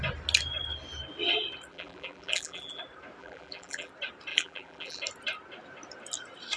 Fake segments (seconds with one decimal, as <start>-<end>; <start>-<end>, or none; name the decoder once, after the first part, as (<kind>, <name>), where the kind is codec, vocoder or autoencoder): 1.7-2.8 (vocoder, BigVGAN v2); 3.2-3.9; 4.3-5.0